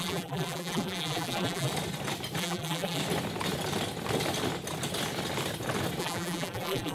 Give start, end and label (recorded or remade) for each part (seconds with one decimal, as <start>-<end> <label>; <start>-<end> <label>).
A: 0.0-1.7 remade; 1.7-2.4 recorded; 2.4-3.0 remade; 3.0-6.0 recorded; 6.0-6.9 remade

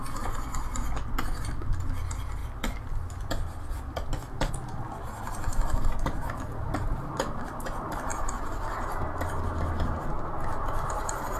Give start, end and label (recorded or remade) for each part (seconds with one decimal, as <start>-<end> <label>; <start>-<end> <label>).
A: 0.0-8.1 remade; 8.1-10.6 recorded; 10.6-11.4 remade

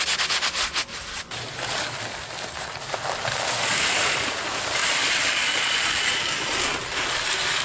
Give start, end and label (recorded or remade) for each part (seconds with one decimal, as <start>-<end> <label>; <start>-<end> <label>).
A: 0.0-0.9 recorded; 0.9-1.7 remade; 1.7-4.8 recorded; 4.8-7.6 remade

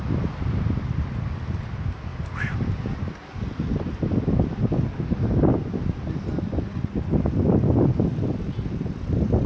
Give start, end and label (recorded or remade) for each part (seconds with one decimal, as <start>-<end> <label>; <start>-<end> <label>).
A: 0.0-9.5 recorded

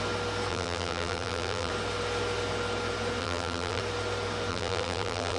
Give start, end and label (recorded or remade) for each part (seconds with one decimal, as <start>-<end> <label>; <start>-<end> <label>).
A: 0.0-0.5 recorded; 0.5-1.7 remade; 1.7-3.2 recorded; 3.2-3.8 remade; 3.8-4.5 recorded; 4.5-5.4 remade